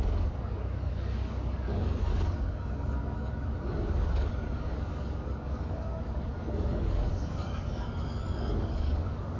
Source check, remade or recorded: remade